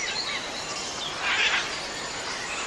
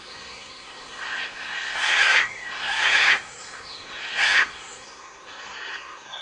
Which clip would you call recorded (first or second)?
first